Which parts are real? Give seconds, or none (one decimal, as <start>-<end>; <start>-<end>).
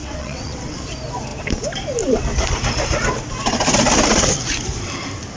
0.8-5.4